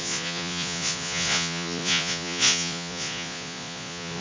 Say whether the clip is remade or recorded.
remade